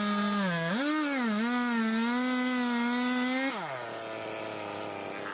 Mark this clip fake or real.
real